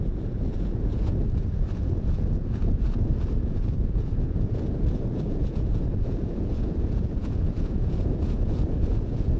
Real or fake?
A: fake